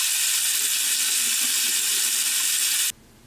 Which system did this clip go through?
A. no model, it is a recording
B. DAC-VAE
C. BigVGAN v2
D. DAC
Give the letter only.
A